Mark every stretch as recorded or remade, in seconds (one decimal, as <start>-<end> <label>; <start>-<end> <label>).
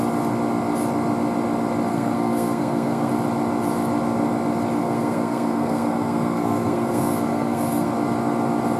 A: 0.0-1.9 recorded; 1.9-3.1 remade; 3.1-4.8 recorded; 4.8-7.9 remade; 7.9-8.8 recorded